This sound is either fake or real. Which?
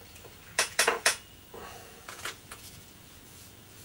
fake